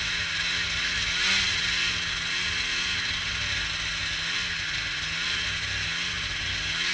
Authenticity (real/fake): real